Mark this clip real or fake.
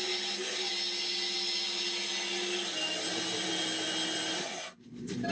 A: real